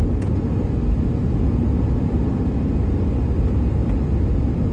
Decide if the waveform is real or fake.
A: real